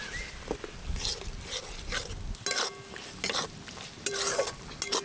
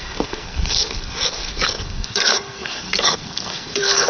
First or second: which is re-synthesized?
second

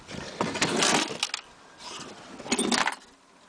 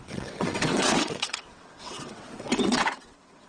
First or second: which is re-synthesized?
second